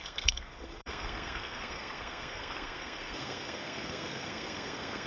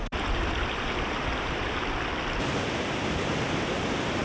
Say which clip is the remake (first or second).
first